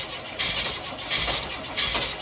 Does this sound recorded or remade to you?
recorded